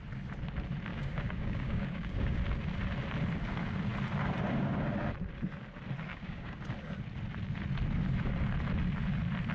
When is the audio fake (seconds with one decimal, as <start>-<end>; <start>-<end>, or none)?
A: 0.9-2.4; 6.1-6.6